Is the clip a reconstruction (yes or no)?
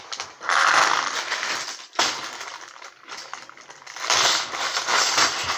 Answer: no